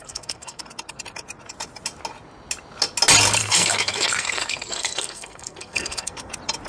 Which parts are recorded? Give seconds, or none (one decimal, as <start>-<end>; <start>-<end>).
0.6-3.4; 6.3-6.7